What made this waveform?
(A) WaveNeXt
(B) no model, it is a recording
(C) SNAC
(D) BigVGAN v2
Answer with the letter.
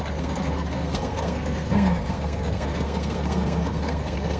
C